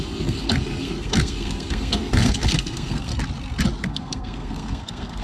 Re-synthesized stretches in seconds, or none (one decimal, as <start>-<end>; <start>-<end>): 0.0-3.1; 3.8-5.2